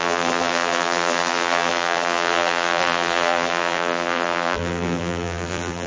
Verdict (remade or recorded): remade